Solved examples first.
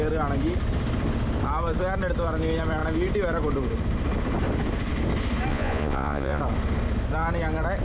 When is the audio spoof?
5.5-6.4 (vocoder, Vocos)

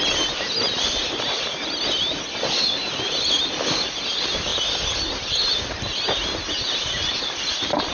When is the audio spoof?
none

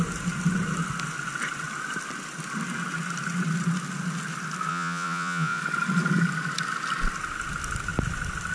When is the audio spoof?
4.7-5.6 (vocoder, Vocos)

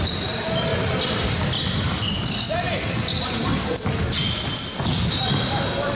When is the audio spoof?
none

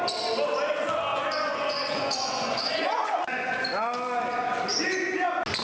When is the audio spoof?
1.1-3.5 (vocoder, Vocos)

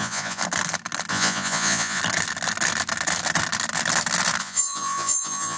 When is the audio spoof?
0.0-0.4 (vocoder, Vocos); 1.1-2.0; 4.4-5.6

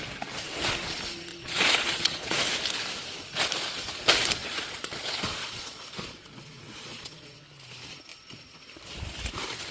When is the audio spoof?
1.3-2.4 (vocoder, Vocos); 4.4-7.4; 8.1-8.6

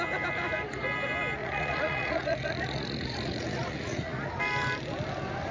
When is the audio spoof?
1.4-4.4 (vocoder, Vocos)